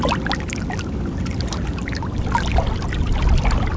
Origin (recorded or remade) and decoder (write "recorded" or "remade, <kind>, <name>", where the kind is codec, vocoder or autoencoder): recorded